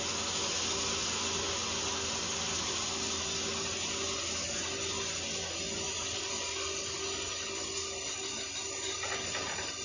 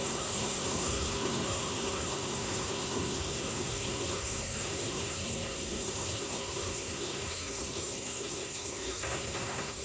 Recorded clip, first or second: first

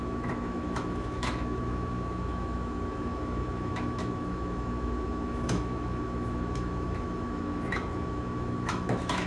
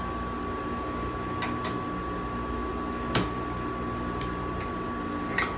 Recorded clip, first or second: second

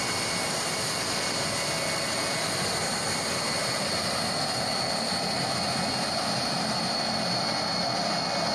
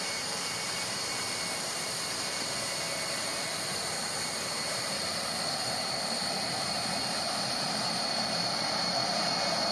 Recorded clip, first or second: first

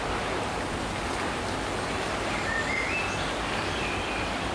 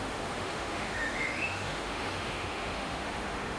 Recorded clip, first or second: first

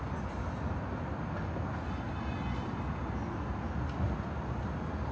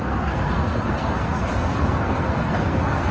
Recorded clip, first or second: first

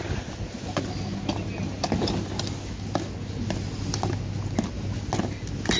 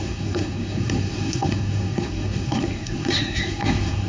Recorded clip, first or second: first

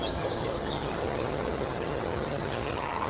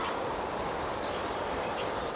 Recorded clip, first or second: second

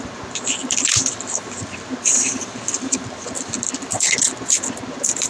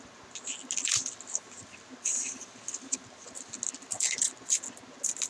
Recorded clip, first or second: second